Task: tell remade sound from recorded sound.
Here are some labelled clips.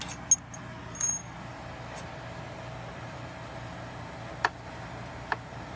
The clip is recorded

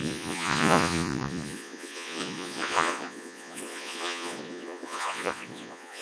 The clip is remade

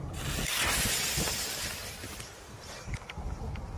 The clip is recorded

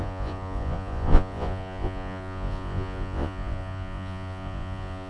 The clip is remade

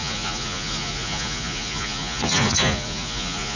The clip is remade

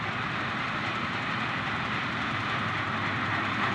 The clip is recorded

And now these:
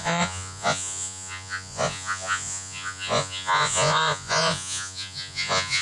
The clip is remade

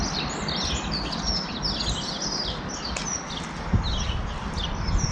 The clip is recorded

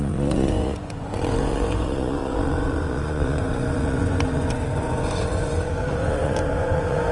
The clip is remade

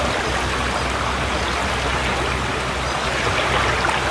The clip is recorded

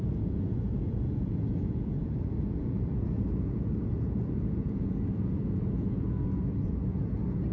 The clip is remade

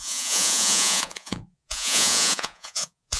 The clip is remade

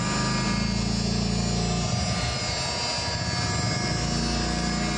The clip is recorded